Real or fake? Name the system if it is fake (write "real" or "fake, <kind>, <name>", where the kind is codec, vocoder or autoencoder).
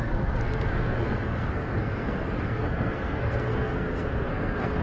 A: fake, codec, SNAC